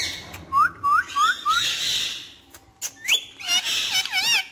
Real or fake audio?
real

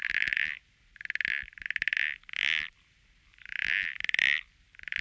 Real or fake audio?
real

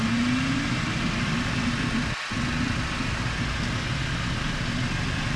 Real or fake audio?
real